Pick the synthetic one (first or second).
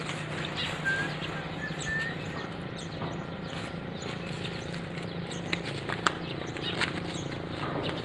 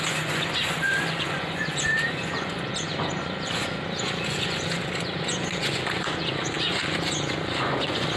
second